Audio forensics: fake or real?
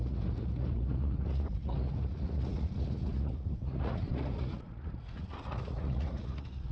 fake